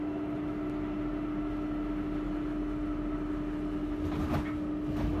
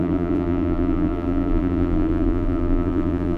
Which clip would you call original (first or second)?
first